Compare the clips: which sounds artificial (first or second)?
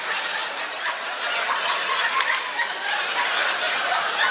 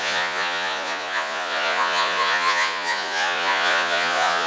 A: second